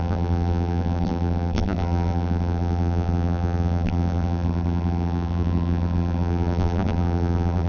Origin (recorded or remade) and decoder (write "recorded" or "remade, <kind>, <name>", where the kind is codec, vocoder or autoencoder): remade, vocoder, BigVGAN v2